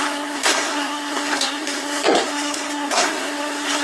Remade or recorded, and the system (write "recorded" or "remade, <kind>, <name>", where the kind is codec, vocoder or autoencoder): remade, codec, SNAC